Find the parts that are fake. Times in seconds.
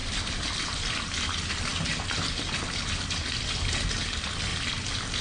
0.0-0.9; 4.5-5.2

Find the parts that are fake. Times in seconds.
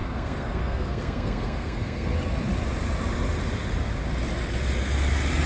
0.0-2.1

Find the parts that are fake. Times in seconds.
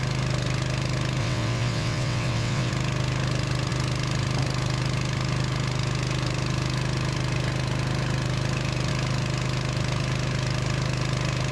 1.2-2.7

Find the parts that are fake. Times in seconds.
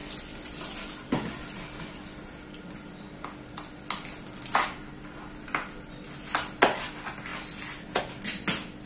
7.3-8.0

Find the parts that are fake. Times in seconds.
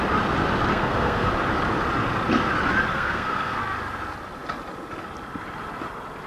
0.7-1.3; 2.9-3.6